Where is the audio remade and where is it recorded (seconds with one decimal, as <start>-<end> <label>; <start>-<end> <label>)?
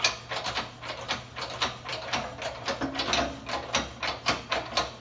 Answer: 0.0-5.0 recorded